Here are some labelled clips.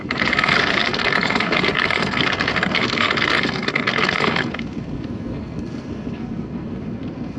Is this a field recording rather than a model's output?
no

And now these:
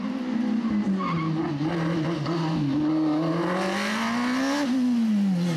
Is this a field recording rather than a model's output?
yes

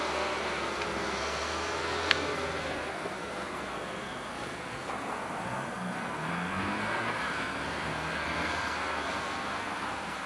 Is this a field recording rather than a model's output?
no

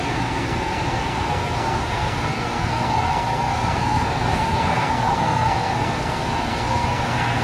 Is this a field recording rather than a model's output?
no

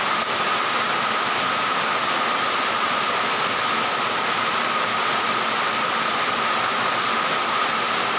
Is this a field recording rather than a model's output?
yes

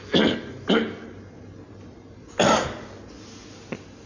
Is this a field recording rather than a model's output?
yes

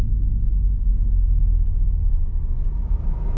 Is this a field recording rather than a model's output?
yes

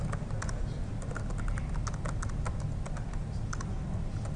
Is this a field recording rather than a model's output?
yes